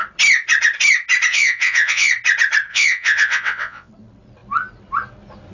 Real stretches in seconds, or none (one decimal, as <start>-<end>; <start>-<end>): 0.0-1.3; 2.1-2.7; 3.9-5.5